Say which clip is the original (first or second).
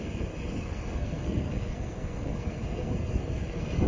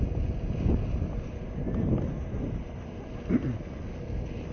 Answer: second